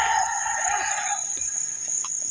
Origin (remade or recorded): remade